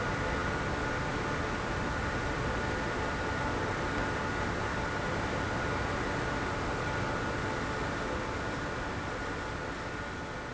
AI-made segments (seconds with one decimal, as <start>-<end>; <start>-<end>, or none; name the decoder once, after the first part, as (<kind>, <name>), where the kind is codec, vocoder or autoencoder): none